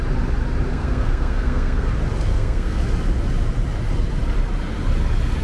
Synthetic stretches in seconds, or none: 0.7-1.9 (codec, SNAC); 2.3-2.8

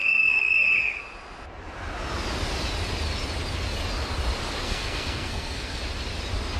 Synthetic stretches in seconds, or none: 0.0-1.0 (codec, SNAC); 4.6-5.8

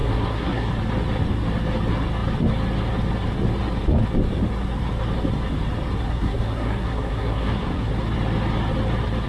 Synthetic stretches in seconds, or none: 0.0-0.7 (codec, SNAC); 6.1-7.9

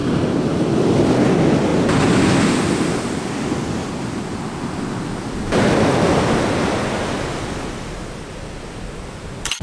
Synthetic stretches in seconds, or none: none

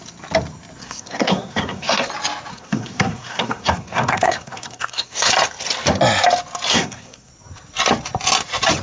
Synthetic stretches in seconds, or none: 0.8-2.1 (codec, SNAC); 2.5-5.3; 6.7-7.3

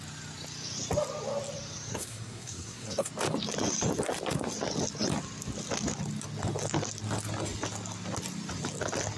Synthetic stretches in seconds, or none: 1.9-3.1 (codec, SNAC)